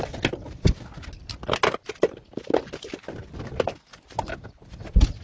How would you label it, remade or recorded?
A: recorded